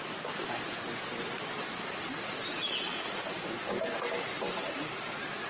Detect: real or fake real